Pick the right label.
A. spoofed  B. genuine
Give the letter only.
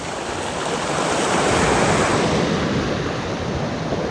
B